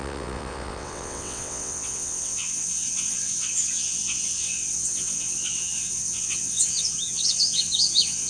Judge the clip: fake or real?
fake